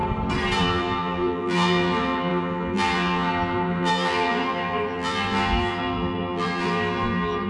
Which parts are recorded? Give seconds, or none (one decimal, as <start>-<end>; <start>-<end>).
0.0-0.6

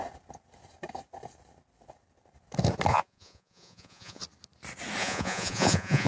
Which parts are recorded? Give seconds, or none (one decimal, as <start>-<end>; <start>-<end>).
0.0-2.9; 4.2-5.0

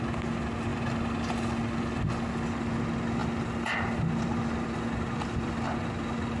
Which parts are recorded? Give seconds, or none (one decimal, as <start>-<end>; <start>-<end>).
0.0-0.7; 1.6-3.2; 4.2-6.4

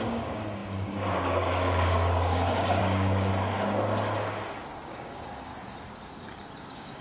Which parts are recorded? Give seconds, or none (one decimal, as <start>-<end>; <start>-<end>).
3.3-4.9; 5.5-6.6

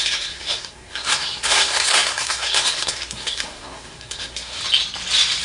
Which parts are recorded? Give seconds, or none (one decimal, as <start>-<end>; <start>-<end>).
4.6-5.4

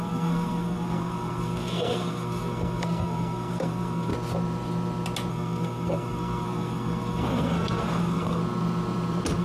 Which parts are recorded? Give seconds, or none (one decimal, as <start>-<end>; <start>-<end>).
4.1-5.3; 8.4-9.4